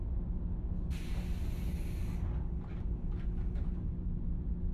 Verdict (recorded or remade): recorded